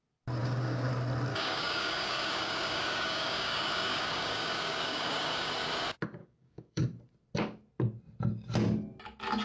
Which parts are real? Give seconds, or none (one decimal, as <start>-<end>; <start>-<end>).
0.0-0.4; 0.9-1.3; 5.5-6.2; 6.8-9.4